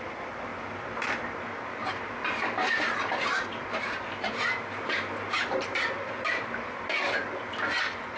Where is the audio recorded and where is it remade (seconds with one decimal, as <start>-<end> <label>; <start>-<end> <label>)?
0.0-1.8 recorded; 1.8-6.7 remade; 6.7-8.2 recorded